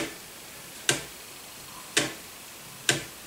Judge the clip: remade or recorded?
recorded